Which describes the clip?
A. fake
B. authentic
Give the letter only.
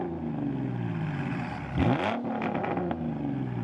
B